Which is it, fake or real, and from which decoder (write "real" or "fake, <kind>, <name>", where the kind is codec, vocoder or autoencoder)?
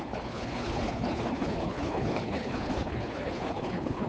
fake, codec, HILCodec